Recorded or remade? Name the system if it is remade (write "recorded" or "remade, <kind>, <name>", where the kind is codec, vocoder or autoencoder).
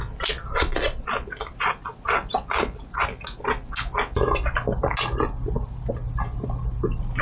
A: recorded